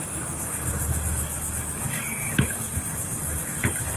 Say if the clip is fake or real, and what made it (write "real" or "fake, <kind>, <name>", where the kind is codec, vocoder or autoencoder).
fake, codec, DAC